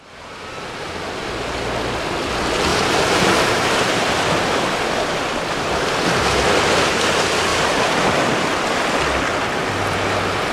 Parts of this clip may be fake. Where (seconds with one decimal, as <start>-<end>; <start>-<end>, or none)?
2.7-4.1; 7.5-8.1